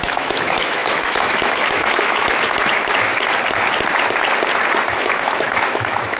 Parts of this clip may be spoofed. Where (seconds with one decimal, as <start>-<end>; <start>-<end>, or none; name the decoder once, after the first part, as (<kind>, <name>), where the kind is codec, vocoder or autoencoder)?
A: 0.0-3.1 (autoencoder, DAC-VAE); 4.9-6.2